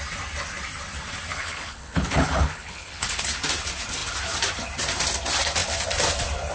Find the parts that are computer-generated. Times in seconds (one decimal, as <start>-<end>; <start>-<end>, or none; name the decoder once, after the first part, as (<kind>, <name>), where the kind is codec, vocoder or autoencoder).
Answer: 1.3-3.2 (codec, HILCodec)